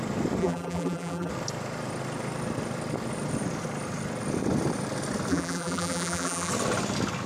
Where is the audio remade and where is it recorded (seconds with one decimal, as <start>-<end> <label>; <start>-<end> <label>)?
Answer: 0.0-0.4 recorded; 0.4-1.3 remade; 1.3-5.3 recorded; 5.3-6.5 remade; 6.5-7.3 recorded

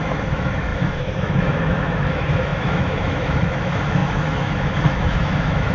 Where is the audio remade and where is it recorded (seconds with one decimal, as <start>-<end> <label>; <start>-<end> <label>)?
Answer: 0.0-5.7 remade

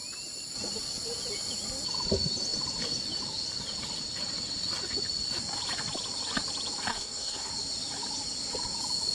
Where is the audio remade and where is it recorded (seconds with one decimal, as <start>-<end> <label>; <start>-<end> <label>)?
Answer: 0.0-6.9 recorded; 6.9-7.5 remade; 7.5-9.1 recorded

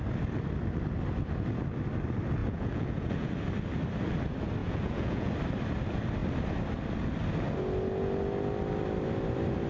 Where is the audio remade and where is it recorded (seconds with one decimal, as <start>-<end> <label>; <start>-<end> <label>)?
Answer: 0.0-2.4 recorded; 2.4-3.3 remade; 3.3-4.6 recorded; 4.6-5.3 remade; 5.3-9.7 recorded